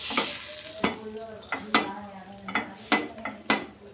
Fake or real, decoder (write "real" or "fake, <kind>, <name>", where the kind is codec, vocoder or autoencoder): real